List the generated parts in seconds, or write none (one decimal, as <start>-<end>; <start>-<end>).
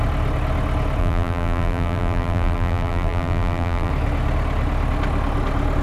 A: 1.0-3.9